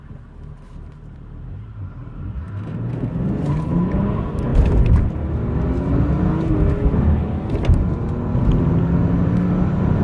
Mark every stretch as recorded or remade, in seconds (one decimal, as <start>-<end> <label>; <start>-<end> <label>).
0.0-1.7 recorded; 1.7-2.9 remade; 2.9-10.0 recorded